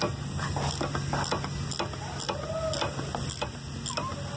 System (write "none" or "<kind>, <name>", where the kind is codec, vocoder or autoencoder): none